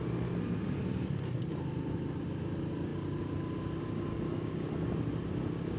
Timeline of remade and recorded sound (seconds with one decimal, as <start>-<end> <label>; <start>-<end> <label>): 0.0-4.1 recorded; 4.1-4.7 remade; 4.7-5.8 recorded